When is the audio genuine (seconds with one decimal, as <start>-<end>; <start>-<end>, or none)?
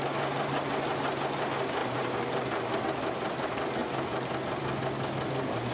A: 0.0-1.8; 2.8-3.8; 4.6-5.7